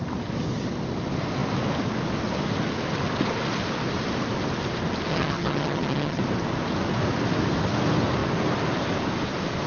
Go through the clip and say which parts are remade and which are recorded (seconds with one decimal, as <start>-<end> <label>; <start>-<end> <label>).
0.0-5.1 recorded; 5.1-6.2 remade; 6.2-9.7 recorded